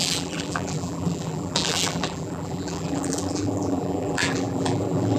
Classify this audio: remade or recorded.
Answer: remade